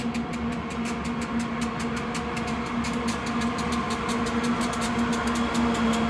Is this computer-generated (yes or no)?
no